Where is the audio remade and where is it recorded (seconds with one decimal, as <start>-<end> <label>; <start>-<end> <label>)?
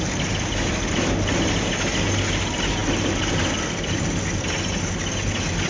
0.0-5.7 recorded